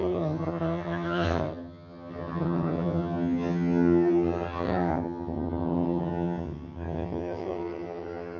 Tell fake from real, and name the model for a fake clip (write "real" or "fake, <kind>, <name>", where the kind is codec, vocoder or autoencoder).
fake, vocoder, HiFi-GAN